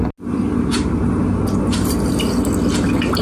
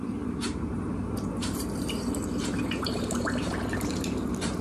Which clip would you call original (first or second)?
first